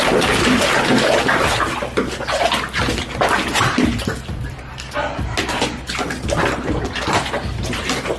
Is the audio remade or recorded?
recorded